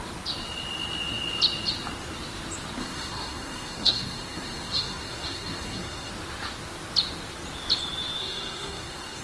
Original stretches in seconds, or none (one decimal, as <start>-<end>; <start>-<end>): 0.0-2.8; 6.1-8.2